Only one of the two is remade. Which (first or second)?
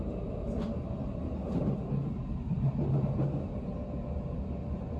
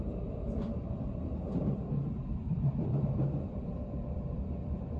second